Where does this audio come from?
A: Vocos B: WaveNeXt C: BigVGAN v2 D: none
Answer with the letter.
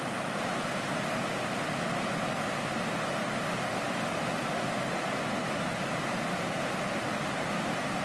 D